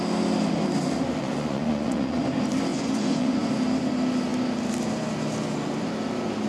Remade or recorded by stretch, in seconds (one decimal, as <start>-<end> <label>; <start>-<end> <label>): 0.0-1.2 recorded; 1.2-2.2 remade; 2.2-2.7 recorded; 2.7-3.5 remade; 3.5-6.5 recorded